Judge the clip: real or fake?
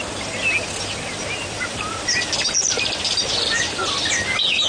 real